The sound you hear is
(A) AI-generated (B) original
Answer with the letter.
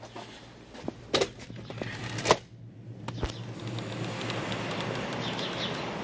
B